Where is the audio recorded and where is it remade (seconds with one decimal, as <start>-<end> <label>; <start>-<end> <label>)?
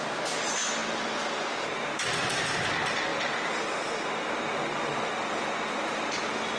0.0-3.1 recorded; 3.1-3.9 remade; 3.9-4.7 recorded; 4.7-6.6 remade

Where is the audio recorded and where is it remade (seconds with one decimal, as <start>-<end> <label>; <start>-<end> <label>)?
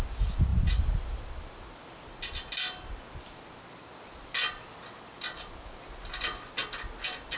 0.0-0.5 recorded; 0.5-1.2 remade; 1.2-7.4 recorded